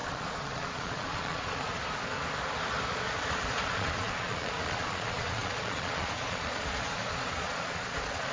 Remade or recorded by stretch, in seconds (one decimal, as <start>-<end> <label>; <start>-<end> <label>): 0.0-1.8 remade; 1.8-2.9 recorded; 2.9-8.3 remade